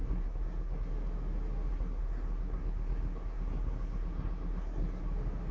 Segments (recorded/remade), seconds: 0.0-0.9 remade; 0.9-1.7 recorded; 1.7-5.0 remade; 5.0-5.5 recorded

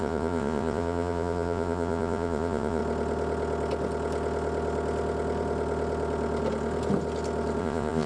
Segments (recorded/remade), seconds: 0.0-2.8 remade; 2.8-7.6 recorded; 7.6-8.1 remade

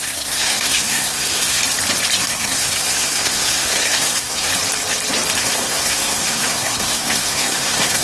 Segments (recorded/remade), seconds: 0.0-1.6 remade; 1.6-2.2 recorded; 2.2-4.5 remade; 4.5-5.4 recorded; 5.4-8.0 remade